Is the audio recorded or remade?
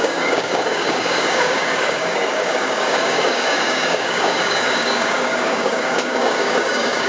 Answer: remade